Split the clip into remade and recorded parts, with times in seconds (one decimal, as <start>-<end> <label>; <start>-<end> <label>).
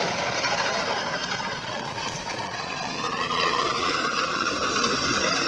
0.0-1.2 recorded; 1.2-4.5 remade; 4.5-5.5 recorded